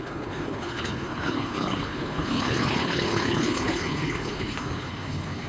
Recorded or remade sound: remade